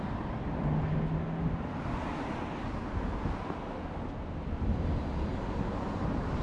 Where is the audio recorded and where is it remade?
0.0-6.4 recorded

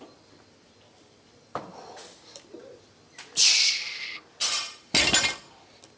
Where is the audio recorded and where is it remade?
0.0-6.0 recorded